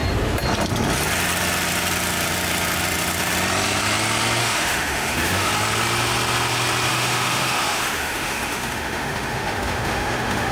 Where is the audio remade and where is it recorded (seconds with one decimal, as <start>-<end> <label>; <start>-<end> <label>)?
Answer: 0.0-4.4 recorded; 4.4-5.5 remade; 5.5-6.9 recorded; 6.9-10.5 remade